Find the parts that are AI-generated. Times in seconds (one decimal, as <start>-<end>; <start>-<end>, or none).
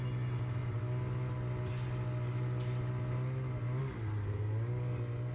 none